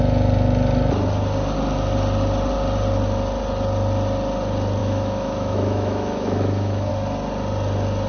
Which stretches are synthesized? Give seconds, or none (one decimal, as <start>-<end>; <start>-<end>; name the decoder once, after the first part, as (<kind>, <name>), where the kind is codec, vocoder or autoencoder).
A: 4.8-6.9 (autoencoder, DAC-VAE)